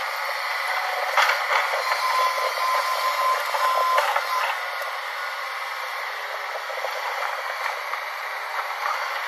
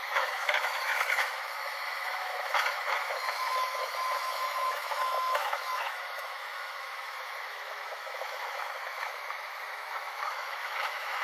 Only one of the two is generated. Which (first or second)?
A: second